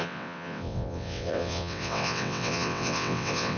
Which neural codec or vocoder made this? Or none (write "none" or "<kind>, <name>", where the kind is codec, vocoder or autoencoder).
vocoder, WaveNeXt